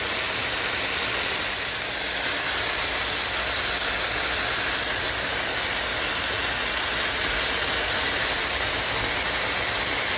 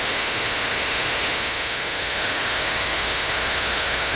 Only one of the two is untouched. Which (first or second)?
first